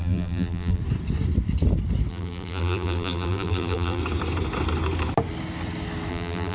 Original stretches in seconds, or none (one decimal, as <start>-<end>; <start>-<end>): 0.8-2.1; 4.0-6.1